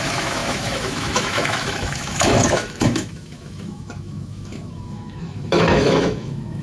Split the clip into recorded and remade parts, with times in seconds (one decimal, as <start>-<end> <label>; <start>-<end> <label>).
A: 0.0-6.6 remade